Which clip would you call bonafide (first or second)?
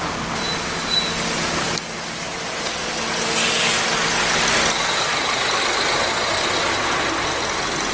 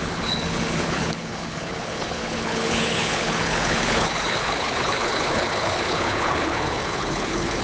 first